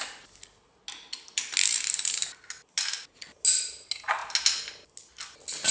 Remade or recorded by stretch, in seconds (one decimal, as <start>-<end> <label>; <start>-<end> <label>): 0.0-5.7 recorded